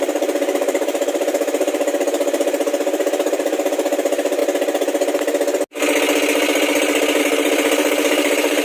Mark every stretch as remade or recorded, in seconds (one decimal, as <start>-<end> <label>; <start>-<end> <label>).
0.0-4.4 remade; 4.4-7.2 recorded; 7.2-8.6 remade